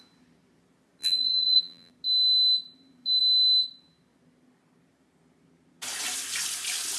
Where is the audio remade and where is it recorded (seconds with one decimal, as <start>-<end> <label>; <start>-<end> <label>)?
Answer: 0.0-1.0 recorded; 1.0-1.9 remade; 1.9-7.0 recorded